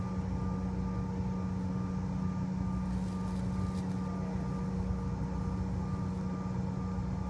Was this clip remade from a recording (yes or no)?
no